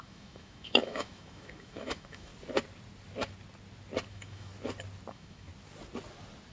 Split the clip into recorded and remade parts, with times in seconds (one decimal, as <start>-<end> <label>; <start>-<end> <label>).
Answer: 0.0-2.3 remade; 2.3-4.1 recorded; 4.1-4.5 remade; 4.5-5.1 recorded; 5.1-5.5 remade; 5.5-6.5 recorded